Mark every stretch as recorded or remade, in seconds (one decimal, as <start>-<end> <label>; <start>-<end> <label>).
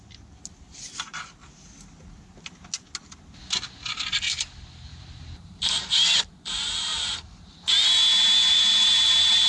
0.0-4.9 recorded; 4.9-6.3 remade; 6.3-8.4 recorded; 8.4-9.5 remade